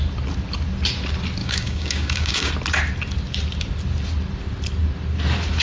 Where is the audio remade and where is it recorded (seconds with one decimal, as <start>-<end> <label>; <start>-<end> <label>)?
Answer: 0.0-1.4 recorded; 1.4-2.5 remade; 2.5-5.6 recorded